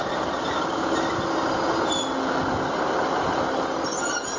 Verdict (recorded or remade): recorded